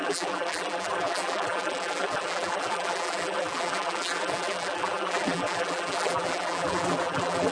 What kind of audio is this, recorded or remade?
remade